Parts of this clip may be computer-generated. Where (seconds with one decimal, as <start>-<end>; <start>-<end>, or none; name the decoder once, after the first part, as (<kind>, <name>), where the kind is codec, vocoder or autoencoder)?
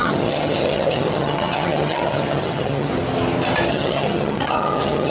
0.0-2.9 (vocoder, HiFi-GAN); 3.7-5.1